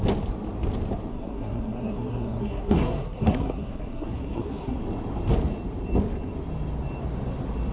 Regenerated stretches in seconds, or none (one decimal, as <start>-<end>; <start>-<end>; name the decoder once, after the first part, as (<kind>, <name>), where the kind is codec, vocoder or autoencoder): 1.1-4.8 (codec, SNAC)